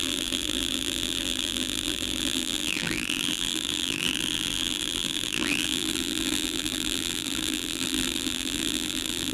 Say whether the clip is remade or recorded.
remade